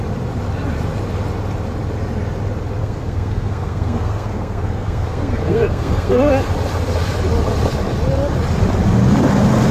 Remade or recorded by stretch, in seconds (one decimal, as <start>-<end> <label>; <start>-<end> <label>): 0.0-2.8 recorded; 2.8-6.3 remade; 6.3-9.7 recorded

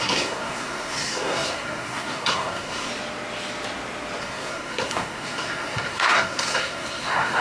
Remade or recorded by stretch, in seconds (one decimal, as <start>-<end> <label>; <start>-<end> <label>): 0.0-2.9 remade; 2.9-4.2 recorded; 4.2-7.4 remade

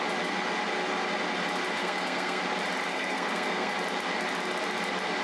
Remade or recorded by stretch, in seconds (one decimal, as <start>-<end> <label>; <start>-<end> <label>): 0.0-1.8 recorded; 1.8-2.4 remade; 2.4-2.9 recorded; 2.9-3.7 remade; 3.7-5.2 recorded

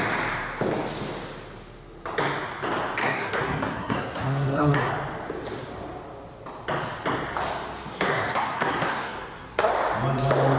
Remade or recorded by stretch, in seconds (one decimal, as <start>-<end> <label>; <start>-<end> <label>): 0.0-3.0 recorded; 3.0-4.9 remade; 4.9-7.9 recorded; 7.9-9.7 remade; 9.7-10.6 recorded

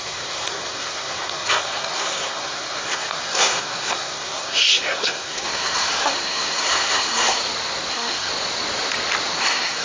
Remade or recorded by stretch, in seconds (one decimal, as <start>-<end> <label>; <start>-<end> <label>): 0.0-7.4 remade; 7.4-7.9 recorded; 7.9-8.3 remade; 8.3-9.4 recorded; 9.4-9.8 remade

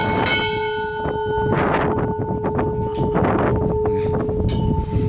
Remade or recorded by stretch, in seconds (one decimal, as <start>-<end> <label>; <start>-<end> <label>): 0.0-5.1 recorded

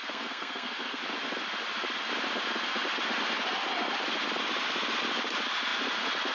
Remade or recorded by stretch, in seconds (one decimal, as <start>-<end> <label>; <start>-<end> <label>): 0.0-1.0 remade; 1.0-6.3 recorded

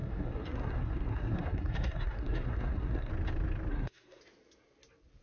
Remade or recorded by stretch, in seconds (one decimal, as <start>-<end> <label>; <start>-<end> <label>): 0.0-3.1 remade; 3.1-3.7 recorded; 3.7-4.2 remade; 4.2-5.2 recorded